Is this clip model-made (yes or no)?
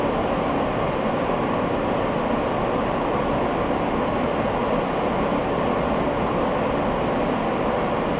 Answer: no